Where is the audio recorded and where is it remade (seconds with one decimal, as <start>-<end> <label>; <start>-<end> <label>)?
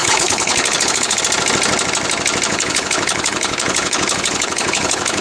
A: 0.0-1.2 remade; 1.2-2.5 recorded; 2.5-5.2 remade